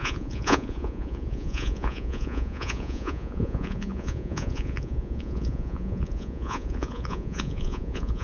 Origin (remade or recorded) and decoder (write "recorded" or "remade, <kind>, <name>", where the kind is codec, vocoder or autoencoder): remade, vocoder, Vocos